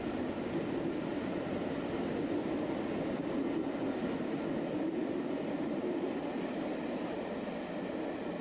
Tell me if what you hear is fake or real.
real